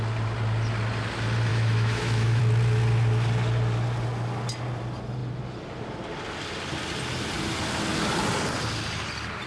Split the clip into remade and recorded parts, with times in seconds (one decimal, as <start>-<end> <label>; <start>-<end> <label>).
0.0-1.5 recorded; 1.5-2.4 remade; 2.4-9.5 recorded